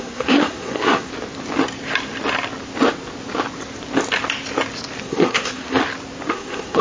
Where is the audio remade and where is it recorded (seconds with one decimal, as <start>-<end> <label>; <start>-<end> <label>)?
0.0-1.1 remade; 1.1-5.0 recorded; 5.0-5.8 remade; 5.8-6.3 recorded; 6.3-6.8 remade